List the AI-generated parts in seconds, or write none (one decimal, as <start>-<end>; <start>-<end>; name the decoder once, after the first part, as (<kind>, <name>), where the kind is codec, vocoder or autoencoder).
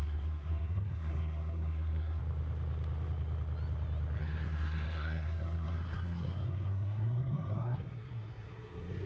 0.0-2.2 (codec, SNAC); 4.2-9.1